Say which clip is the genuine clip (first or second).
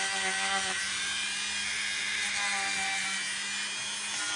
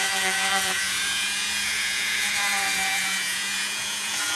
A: first